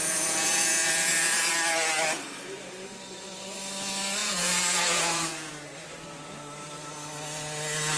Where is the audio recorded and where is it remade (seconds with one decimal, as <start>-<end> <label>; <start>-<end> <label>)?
0.0-1.5 remade; 1.5-4.2 recorded; 4.2-5.5 remade; 5.5-8.0 recorded